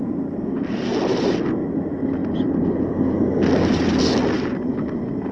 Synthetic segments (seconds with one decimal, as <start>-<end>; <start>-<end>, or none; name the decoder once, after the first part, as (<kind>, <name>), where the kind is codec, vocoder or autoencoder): none